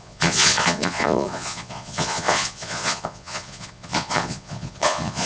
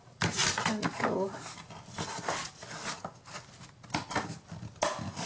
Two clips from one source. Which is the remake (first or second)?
first